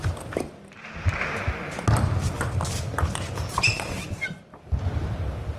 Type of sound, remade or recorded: recorded